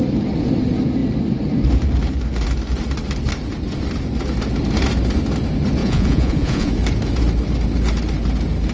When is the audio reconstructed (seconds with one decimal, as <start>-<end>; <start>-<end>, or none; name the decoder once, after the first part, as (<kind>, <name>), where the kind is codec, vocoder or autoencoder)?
5.8-6.7 (vocoder, Vocos)